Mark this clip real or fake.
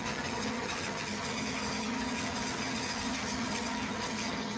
fake